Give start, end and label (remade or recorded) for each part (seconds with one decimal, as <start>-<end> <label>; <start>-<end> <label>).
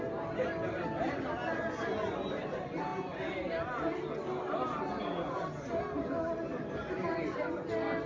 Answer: 0.0-8.1 recorded